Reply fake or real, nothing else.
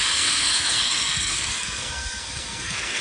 fake